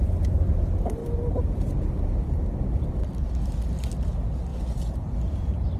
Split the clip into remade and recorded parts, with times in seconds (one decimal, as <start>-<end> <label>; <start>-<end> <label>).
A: 0.0-5.8 recorded